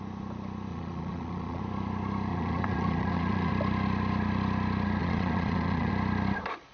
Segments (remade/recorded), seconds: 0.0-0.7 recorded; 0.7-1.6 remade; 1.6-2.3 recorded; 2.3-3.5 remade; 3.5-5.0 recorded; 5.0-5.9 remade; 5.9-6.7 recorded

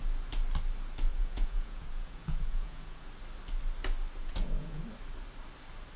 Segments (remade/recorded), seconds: 0.0-1.1 recorded; 1.1-3.0 remade; 3.0-4.2 recorded; 4.2-4.8 remade; 4.8-6.0 recorded

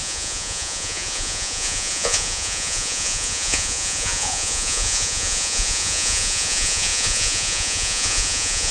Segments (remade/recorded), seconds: 0.0-8.7 remade

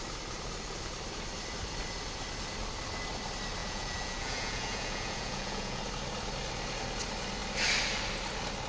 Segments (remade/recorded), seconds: 0.0-3.6 recorded; 3.6-5.8 remade; 5.8-8.7 recorded

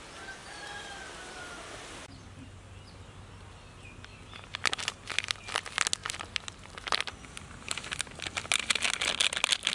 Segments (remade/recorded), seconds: 0.0-9.7 recorded

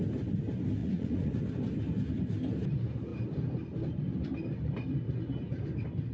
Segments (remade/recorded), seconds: 0.0-0.8 recorded; 0.8-1.4 remade; 1.4-6.1 recorded